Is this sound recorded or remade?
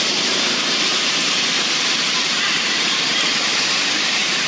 remade